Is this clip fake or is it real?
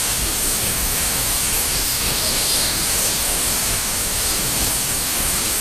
fake